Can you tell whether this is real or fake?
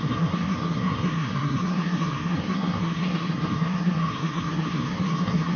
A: fake